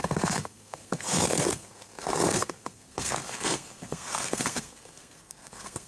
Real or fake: fake